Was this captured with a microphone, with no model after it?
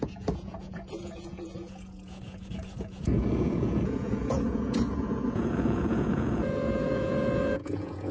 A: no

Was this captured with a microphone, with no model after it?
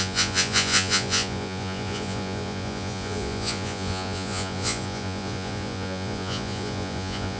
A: no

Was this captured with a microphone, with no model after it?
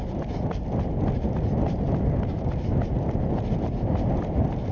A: yes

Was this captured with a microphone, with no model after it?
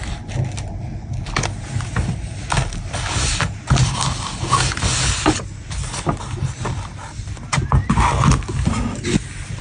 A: yes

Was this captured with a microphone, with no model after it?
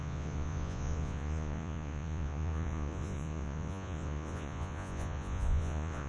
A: no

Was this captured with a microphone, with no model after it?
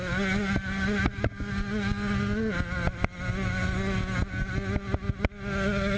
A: yes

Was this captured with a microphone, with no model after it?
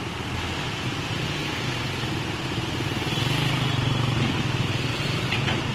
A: yes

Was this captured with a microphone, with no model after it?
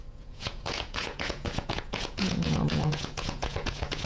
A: no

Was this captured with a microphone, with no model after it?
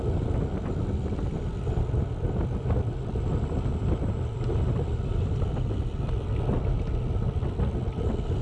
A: yes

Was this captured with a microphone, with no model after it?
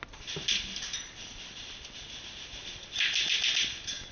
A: yes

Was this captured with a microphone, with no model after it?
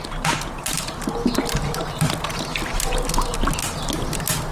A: yes